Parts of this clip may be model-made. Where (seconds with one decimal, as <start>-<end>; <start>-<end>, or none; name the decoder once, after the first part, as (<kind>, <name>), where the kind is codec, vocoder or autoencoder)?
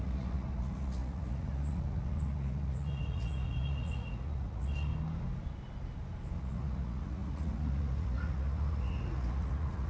0.0-4.9 (vocoder, Vocos); 6.4-9.9